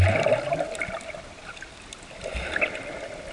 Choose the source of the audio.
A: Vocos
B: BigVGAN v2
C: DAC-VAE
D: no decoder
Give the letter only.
D